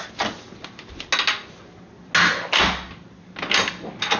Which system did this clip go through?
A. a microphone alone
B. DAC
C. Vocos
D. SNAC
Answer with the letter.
A